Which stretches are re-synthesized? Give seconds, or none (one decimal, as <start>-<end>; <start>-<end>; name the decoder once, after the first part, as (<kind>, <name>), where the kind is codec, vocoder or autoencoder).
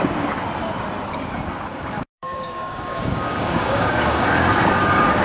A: 1.7-4.2 (codec, DAC)